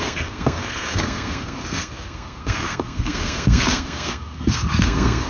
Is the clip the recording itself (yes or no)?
no